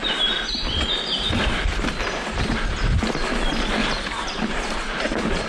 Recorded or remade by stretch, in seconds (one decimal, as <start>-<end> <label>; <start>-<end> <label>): 0.0-3.8 recorded; 3.8-5.0 remade; 5.0-5.5 recorded